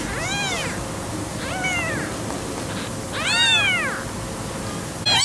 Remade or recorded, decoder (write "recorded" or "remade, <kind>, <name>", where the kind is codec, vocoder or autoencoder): recorded